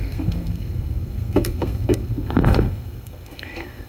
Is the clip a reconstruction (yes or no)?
yes